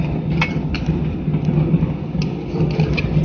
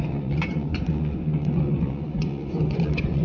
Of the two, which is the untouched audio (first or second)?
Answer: first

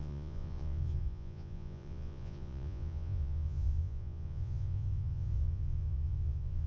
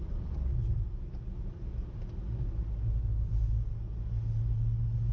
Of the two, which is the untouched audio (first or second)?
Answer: second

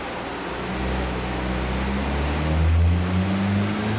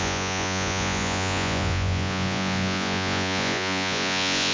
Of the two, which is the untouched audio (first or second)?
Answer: first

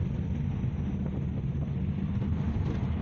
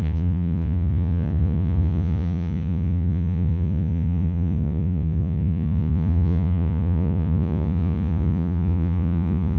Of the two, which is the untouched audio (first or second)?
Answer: first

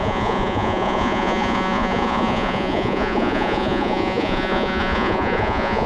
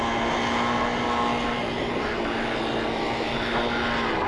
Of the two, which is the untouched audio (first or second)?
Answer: second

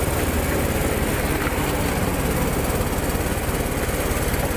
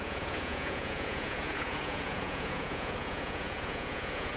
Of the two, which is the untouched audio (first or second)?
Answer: first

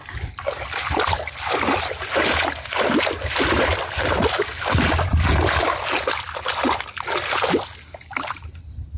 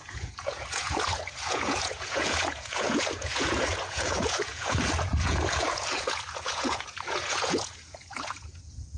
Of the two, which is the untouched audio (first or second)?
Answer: first